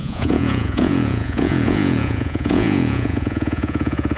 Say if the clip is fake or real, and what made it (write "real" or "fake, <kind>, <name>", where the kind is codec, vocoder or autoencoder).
fake, vocoder, Vocos